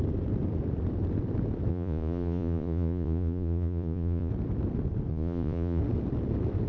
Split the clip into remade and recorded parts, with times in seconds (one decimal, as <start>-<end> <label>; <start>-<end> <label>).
0.0-1.7 recorded; 1.7-4.3 remade; 4.3-5.1 recorded; 5.1-5.8 remade; 5.8-6.7 recorded